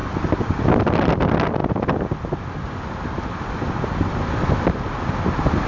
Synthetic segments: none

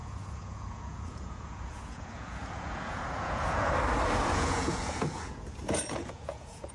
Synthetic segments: 0.0-3.7; 4.3-6.7

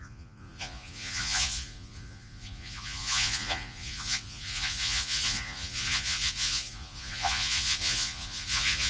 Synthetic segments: 0.0-8.9

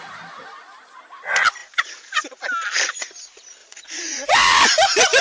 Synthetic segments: 1.6-2.4; 3.6-4.6

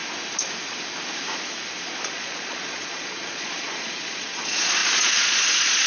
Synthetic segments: 2.0-5.9

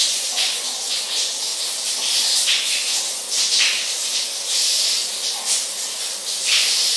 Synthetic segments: 0.0-1.5; 2.2-3.2

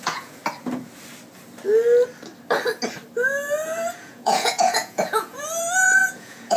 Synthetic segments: 0.0-0.4; 4.0-6.6

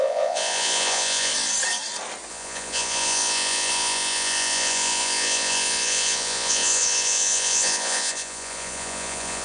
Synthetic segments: 0.0-1.3; 2.3-9.4